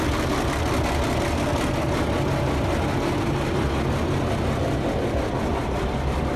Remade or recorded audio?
recorded